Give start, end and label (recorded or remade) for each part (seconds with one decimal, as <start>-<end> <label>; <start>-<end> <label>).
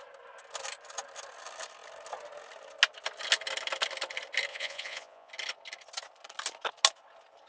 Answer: 0.0-4.5 recorded; 4.5-5.3 remade; 5.3-7.5 recorded